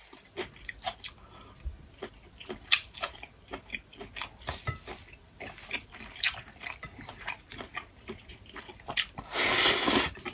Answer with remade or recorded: remade